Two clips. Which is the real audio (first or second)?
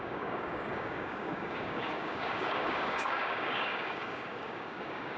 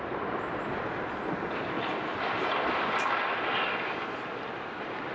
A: second